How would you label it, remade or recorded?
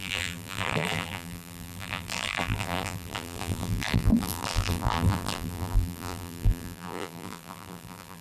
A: remade